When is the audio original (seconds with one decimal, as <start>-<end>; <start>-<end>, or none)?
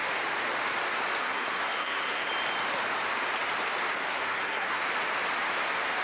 0.0-1.2; 2.3-4.1; 4.8-6.0